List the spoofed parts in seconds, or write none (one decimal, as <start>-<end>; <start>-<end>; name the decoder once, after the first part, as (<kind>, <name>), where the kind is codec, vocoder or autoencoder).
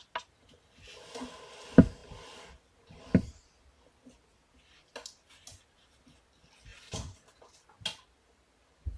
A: none